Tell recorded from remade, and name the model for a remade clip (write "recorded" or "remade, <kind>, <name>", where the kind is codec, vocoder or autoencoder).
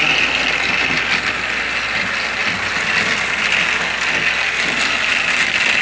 recorded